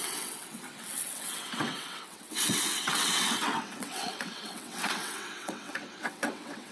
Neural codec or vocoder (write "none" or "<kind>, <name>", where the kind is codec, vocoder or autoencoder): vocoder, WaveNeXt